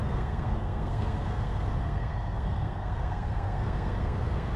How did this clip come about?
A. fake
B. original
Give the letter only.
A